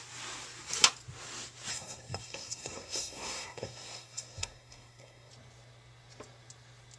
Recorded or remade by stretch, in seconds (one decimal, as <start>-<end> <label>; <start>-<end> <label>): 0.0-1.7 recorded; 1.7-5.3 remade; 5.3-7.0 recorded